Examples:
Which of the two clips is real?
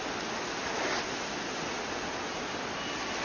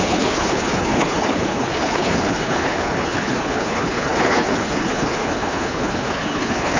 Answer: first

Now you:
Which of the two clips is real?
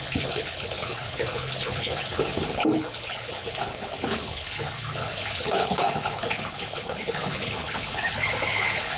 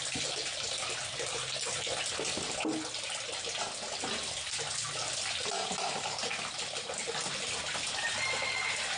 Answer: second